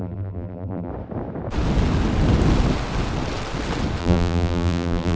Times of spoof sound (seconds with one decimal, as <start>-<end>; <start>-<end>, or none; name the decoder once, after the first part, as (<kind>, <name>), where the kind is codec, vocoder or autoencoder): 0.0-0.9 (vocoder, BigVGAN v2); 4.0-5.2